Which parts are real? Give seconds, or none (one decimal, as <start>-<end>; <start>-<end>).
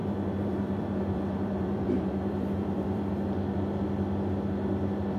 3.1-5.2